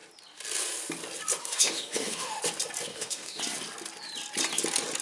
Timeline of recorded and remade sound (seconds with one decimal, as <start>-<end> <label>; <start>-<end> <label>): 0.0-1.4 recorded; 1.4-2.4 remade; 2.4-2.9 recorded; 2.9-3.4 remade; 3.4-5.0 recorded